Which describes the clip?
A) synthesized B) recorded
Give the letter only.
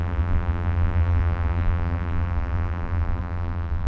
A